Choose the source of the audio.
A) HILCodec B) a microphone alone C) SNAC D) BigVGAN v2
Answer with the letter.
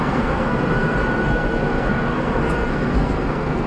C